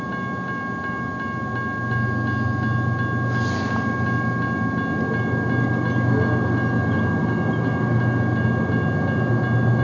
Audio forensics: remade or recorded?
recorded